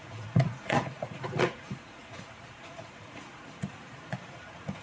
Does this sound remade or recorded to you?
remade